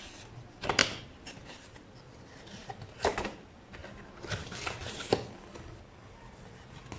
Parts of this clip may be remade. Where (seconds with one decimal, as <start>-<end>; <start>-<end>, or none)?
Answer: 0.0-4.8; 6.3-7.0